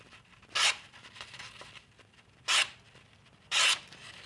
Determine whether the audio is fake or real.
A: real